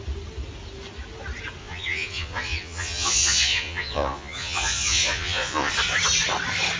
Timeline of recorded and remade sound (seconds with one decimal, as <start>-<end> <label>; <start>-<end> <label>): 0.0-1.6 recorded; 1.6-5.7 remade; 5.7-6.8 recorded